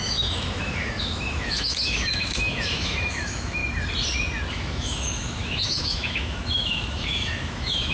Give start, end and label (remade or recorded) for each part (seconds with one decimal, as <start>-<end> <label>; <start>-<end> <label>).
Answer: 0.0-3.6 remade; 3.6-4.5 recorded; 4.5-7.9 remade